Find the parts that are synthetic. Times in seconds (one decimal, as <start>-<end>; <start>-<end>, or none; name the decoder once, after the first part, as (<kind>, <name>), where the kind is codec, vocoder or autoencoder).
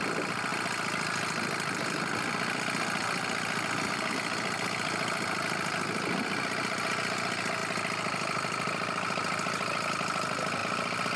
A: none